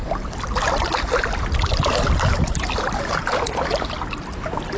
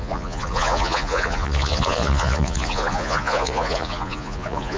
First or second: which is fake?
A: second